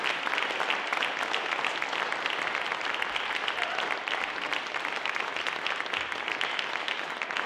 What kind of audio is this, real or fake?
real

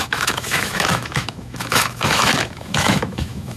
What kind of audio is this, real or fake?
fake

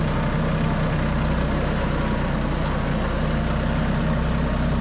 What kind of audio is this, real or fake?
real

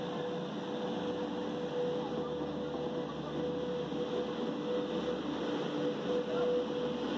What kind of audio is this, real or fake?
real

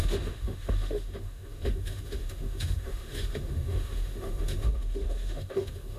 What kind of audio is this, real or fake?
fake